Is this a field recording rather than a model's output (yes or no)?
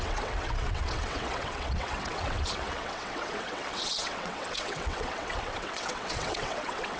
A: no